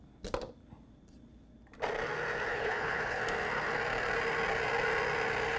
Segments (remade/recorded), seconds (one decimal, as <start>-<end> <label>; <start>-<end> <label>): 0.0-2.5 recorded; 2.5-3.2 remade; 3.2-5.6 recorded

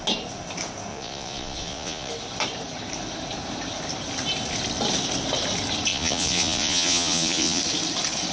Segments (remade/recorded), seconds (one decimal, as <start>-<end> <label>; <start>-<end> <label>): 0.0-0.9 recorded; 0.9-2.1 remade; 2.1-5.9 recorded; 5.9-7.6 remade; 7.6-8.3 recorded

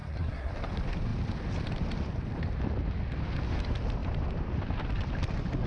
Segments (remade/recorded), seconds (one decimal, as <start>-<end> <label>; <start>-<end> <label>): 0.0-0.5 remade; 0.5-5.7 recorded